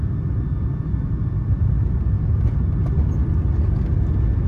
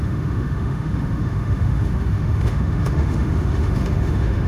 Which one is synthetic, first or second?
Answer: second